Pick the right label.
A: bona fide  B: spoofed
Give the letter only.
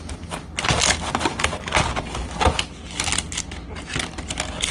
A